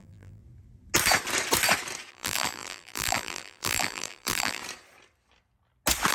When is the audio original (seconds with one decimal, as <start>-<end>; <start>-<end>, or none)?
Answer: 0.4-2.1; 4.6-6.1